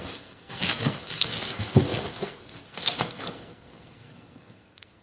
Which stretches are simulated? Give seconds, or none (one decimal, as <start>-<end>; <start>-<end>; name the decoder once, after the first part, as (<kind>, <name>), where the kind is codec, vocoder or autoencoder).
0.0-5.0 (codec, SNAC)